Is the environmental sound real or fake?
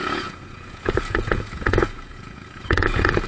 fake